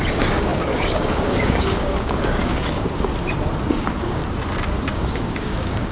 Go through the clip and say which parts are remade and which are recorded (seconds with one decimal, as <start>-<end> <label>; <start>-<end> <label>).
0.0-3.1 remade; 3.1-3.7 recorded; 3.7-4.2 remade; 4.2-4.9 recorded; 4.9-5.9 remade